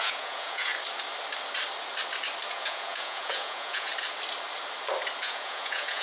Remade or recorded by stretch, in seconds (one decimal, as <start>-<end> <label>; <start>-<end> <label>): 0.0-0.7 remade; 0.7-2.5 recorded; 2.5-3.9 remade; 3.9-5.2 recorded; 5.2-6.0 remade